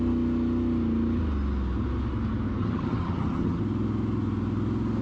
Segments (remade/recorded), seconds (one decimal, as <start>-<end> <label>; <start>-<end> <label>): 0.0-2.6 recorded; 2.6-3.6 remade; 3.6-5.0 recorded